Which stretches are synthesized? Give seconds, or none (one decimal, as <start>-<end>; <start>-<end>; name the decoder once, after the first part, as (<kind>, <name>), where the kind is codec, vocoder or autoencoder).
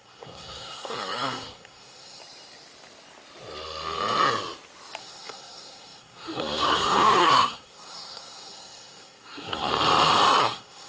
0.0-2.2 (codec, SNAC); 5.0-9.7; 10.4-10.9